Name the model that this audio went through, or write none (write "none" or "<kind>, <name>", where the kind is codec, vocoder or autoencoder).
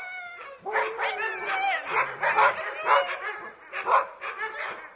none